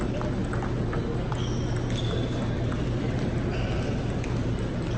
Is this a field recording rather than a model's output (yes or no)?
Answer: yes